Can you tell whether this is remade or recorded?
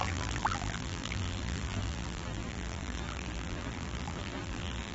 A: remade